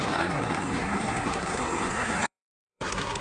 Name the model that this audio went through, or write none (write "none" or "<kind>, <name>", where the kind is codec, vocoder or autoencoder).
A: codec, SNAC